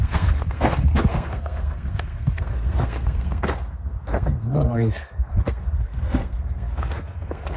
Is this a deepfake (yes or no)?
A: yes